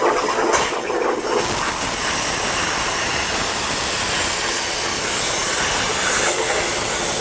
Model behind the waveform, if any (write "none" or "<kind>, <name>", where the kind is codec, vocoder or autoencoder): none